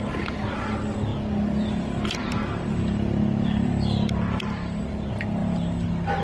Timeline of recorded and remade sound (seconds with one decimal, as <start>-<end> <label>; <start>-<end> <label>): 0.0-6.2 recorded